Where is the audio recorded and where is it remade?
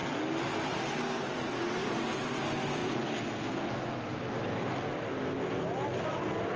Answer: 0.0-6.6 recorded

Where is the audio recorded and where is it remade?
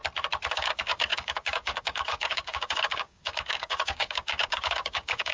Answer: 0.0-0.5 recorded; 0.5-5.3 remade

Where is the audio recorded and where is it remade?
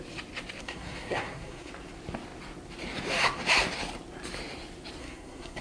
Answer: 0.0-0.6 recorded; 0.6-1.7 remade; 1.7-5.0 recorded; 5.0-5.6 remade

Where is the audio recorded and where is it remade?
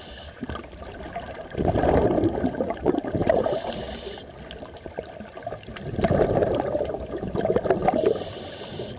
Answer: 0.0-9.0 recorded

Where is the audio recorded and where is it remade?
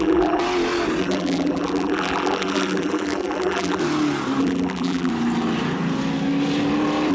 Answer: 0.0-0.4 remade; 0.4-1.0 recorded; 1.0-3.8 remade; 3.8-4.4 recorded; 4.4-5.1 remade; 5.1-7.1 recorded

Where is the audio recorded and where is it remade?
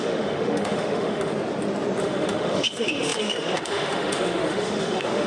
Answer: 0.0-1.3 remade; 1.3-2.0 recorded; 2.0-5.3 remade